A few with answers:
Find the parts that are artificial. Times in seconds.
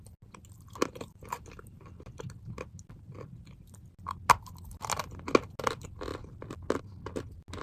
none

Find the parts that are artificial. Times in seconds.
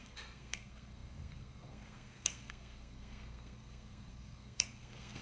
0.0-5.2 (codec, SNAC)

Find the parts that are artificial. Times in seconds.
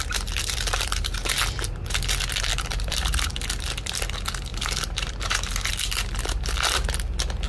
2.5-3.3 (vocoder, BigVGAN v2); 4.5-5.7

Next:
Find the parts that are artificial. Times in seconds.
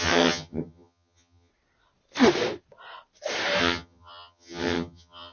0.0-1.5 (vocoder, HiFi-GAN); 3.6-5.3